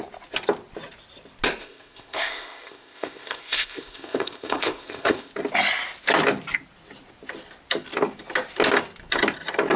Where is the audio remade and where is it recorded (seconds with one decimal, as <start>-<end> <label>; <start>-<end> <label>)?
0.0-1.6 recorded; 1.6-5.3 remade; 5.3-9.8 recorded